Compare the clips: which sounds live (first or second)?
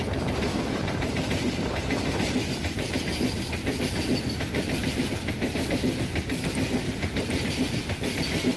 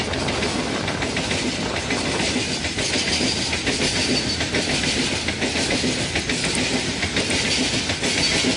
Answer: second